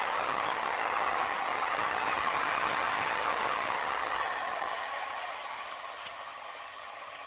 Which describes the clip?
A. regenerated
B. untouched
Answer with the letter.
A